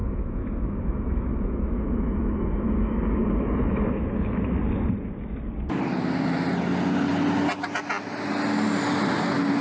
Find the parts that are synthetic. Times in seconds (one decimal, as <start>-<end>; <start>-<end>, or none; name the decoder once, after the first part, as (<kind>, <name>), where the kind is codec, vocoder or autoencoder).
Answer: 0.0-3.9 (autoencoder, DAC-VAE)